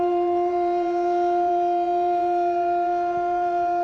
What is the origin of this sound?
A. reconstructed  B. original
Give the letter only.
A